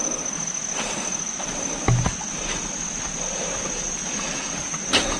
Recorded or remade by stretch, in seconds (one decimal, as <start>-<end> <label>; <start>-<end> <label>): 0.0-5.2 recorded